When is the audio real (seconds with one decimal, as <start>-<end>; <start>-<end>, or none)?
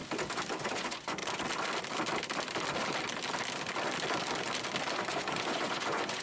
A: 0.0-0.6; 1.2-4.9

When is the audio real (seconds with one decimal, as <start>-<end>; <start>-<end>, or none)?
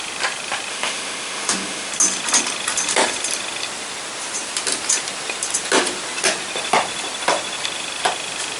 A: 0.0-0.7; 1.9-8.6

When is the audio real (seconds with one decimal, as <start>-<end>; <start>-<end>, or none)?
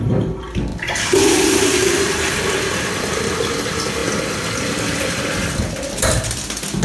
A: 0.0-0.7; 2.4-6.8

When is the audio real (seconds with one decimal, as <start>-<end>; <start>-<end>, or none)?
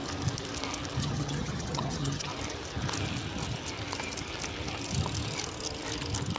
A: 0.0-1.0; 2.3-6.4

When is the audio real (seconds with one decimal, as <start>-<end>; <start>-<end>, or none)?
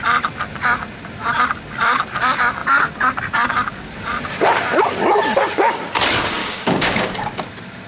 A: 0.0-6.4; 7.4-7.9